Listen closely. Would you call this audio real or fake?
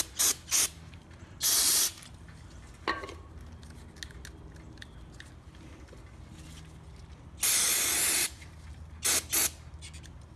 real